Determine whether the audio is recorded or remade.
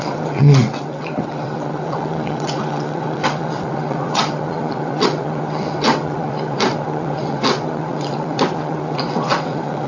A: remade